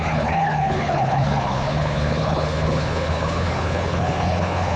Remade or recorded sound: remade